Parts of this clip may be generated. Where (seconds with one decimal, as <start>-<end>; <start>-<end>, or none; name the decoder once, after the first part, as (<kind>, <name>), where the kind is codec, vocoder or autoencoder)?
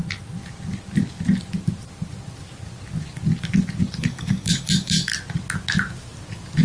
4.0-5.1 (codec, DAC)